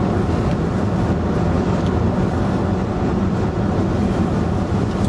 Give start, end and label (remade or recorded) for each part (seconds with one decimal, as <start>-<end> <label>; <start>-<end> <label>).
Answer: 0.0-2.7 recorded; 2.7-3.3 remade; 3.3-5.1 recorded